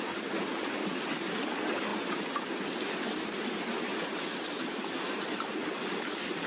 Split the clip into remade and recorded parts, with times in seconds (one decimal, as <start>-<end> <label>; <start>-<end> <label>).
0.0-6.5 recorded